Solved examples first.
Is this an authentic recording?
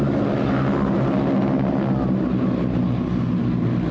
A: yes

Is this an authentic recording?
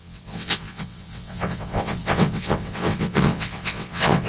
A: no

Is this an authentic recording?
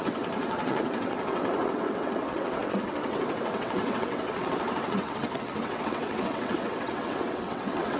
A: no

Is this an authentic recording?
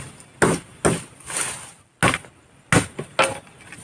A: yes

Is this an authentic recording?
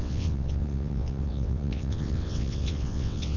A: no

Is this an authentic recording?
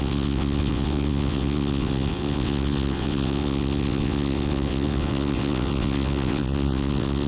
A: no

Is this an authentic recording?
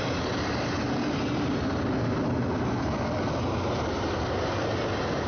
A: yes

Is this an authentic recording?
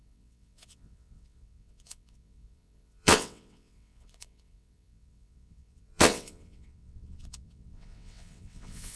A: no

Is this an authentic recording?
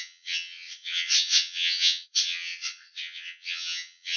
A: no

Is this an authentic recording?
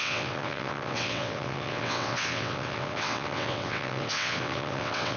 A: no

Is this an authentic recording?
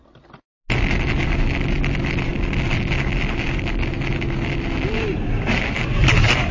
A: yes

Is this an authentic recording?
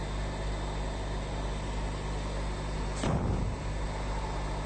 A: yes